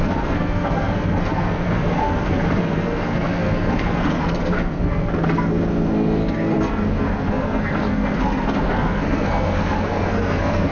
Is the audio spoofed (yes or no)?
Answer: yes